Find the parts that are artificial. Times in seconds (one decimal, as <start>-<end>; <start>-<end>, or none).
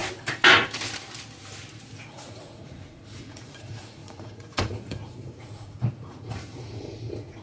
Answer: 2.1-7.4